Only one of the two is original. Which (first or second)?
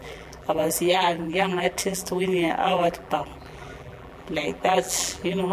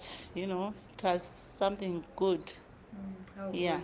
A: second